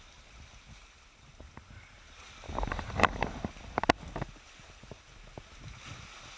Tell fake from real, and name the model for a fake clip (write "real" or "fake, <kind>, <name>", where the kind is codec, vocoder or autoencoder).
real